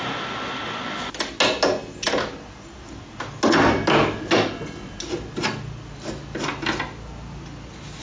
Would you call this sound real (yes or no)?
yes